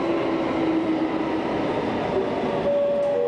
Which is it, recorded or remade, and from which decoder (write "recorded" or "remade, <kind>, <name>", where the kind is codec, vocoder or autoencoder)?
recorded